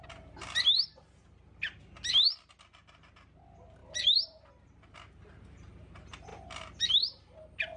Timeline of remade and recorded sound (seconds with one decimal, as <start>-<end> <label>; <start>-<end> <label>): 0.0-7.8 recorded